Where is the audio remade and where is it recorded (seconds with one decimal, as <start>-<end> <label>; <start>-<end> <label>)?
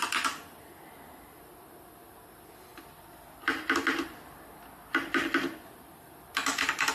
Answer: 0.0-1.4 remade; 1.4-2.7 recorded; 2.7-6.9 remade